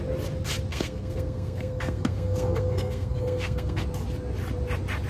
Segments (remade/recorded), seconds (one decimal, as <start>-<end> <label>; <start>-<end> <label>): 0.0-0.7 recorded; 0.7-3.8 remade; 3.8-5.1 recorded